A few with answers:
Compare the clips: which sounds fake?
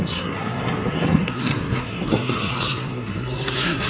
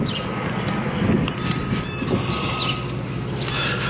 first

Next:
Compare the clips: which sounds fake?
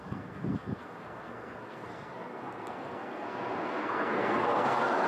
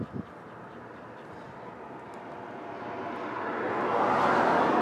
first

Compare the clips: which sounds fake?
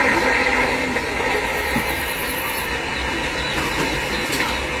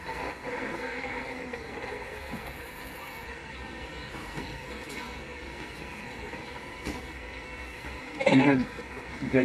second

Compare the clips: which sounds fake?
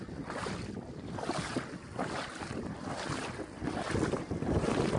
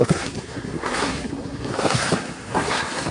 second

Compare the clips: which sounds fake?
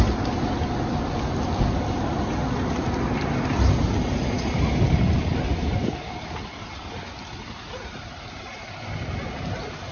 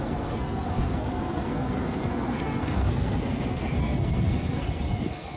second